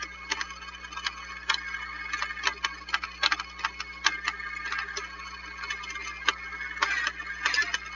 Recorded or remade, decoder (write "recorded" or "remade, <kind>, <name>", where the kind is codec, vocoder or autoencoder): recorded